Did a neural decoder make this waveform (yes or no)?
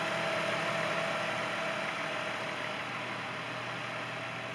no